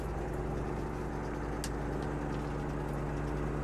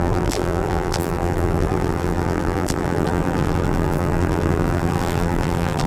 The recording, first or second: first